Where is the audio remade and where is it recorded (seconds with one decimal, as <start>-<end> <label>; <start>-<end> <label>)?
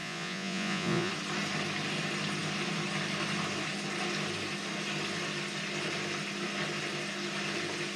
0.0-1.1 remade; 1.1-8.0 recorded